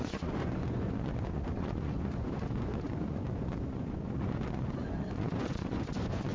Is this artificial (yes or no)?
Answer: yes